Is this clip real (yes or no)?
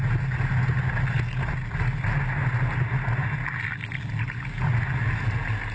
yes